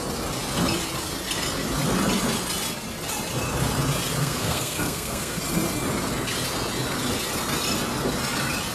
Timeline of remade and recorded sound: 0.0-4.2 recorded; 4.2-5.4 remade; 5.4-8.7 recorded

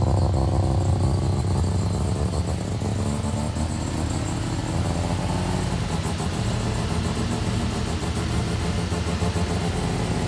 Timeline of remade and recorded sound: 0.0-10.3 recorded

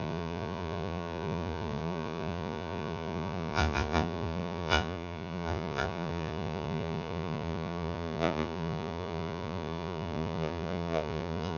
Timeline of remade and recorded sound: 0.0-11.6 remade

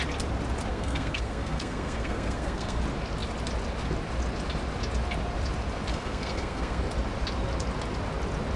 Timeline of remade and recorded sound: 0.0-0.7 recorded; 0.7-2.8 remade; 2.8-5.9 recorded; 5.9-6.8 remade; 6.8-8.6 recorded